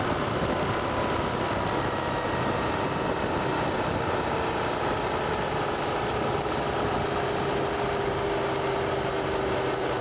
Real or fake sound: real